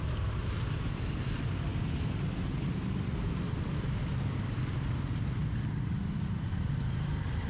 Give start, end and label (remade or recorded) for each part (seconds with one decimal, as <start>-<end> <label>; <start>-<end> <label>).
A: 0.0-5.4 remade; 5.4-6.5 recorded; 6.5-7.5 remade